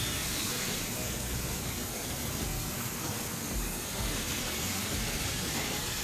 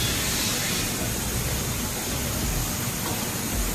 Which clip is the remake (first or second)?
first